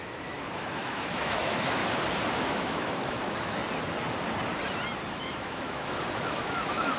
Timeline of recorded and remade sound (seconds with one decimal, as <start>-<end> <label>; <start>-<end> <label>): 0.0-1.8 remade; 1.8-2.3 recorded; 2.3-3.6 remade; 3.6-5.1 recorded; 5.1-7.0 remade